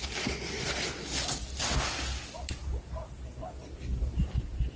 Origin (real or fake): real